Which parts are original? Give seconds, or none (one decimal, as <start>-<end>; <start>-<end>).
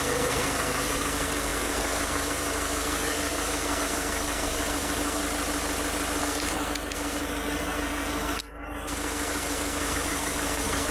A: 5.2-6.2